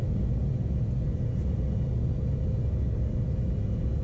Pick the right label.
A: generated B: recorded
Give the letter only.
B